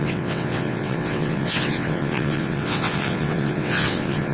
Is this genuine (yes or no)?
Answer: no